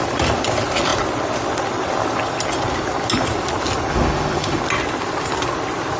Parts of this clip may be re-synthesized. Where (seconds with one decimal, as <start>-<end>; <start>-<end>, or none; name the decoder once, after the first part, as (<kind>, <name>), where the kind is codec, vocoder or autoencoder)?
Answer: 3.9-4.6 (autoencoder, DAC-VAE)